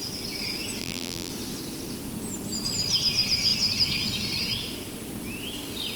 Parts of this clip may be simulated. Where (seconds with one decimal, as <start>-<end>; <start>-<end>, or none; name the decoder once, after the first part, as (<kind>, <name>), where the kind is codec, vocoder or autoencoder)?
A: 0.8-1.3 (vocoder, BigVGAN v2)